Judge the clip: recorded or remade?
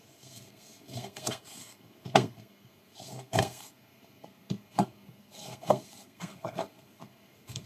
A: remade